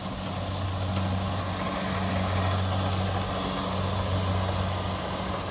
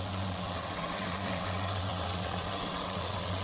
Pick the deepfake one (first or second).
second